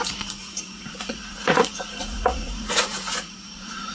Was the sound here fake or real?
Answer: fake